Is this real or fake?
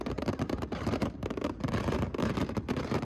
fake